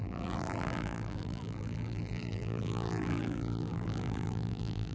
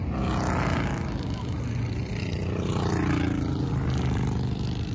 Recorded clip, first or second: second